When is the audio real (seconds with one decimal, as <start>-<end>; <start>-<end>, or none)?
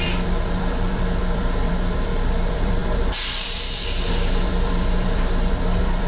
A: none